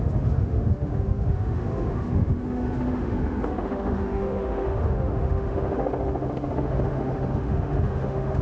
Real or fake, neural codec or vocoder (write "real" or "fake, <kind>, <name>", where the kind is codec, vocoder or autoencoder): fake, autoencoder, DAC-VAE